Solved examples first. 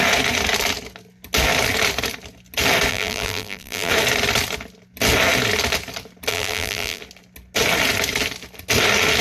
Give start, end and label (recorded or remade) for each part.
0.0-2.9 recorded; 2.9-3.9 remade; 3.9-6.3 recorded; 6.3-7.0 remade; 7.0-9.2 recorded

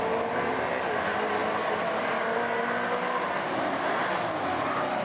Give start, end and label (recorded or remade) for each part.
0.0-5.0 recorded